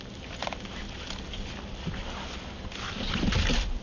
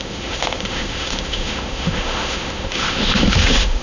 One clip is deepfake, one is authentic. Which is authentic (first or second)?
first